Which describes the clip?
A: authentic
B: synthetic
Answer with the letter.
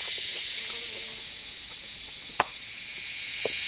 B